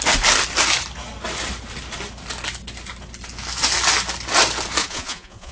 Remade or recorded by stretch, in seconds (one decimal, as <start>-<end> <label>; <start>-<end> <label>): 0.0-4.8 recorded; 4.8-5.5 remade